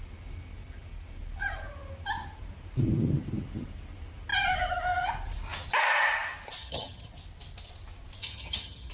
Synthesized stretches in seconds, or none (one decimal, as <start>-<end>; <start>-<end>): 6.6-7.1; 8.2-8.9